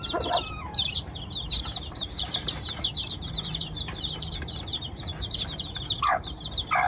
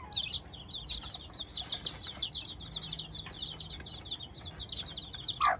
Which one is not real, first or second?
first